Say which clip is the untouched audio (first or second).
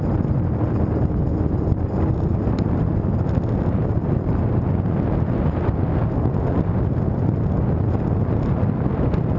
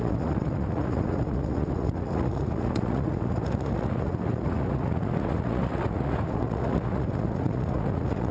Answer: first